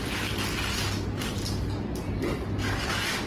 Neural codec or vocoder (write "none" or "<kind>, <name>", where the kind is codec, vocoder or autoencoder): none